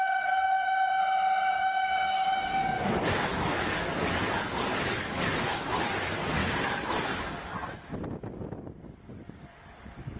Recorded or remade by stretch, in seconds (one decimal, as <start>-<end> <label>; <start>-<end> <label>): 0.0-1.0 remade; 1.0-1.5 recorded; 1.5-6.4 remade; 6.4-7.0 recorded; 7.0-7.6 remade; 7.6-8.8 recorded; 8.8-10.2 remade